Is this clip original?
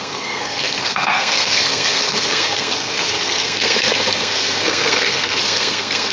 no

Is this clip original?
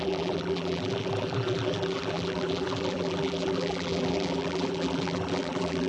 no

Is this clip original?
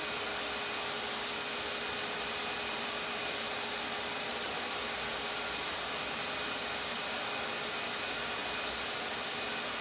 yes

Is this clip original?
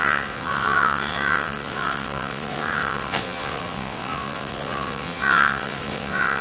no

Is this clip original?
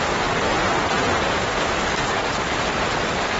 yes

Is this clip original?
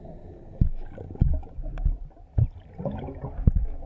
yes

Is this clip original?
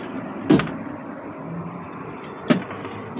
yes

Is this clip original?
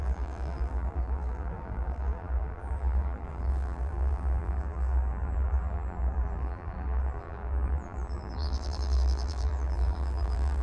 no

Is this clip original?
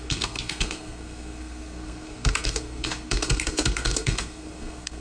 no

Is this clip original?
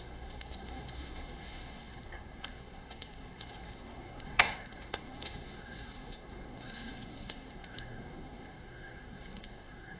no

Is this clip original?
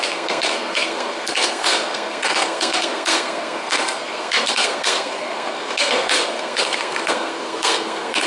no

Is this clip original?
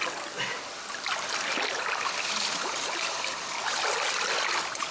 yes